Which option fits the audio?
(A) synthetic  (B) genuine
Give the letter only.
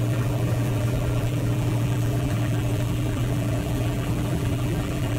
A